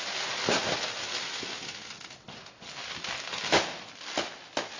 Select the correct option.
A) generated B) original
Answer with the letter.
B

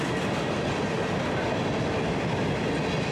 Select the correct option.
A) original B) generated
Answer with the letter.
A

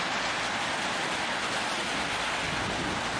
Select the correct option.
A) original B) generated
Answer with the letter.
A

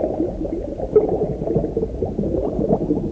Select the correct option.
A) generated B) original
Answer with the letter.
B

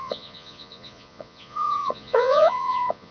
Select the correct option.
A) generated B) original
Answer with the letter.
A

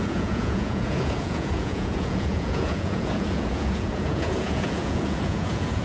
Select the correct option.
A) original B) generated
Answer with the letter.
B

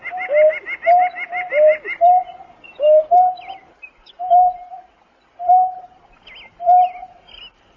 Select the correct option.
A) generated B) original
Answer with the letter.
B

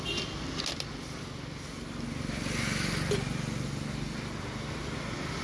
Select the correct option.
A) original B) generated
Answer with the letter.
A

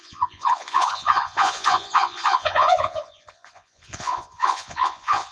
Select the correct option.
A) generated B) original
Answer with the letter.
A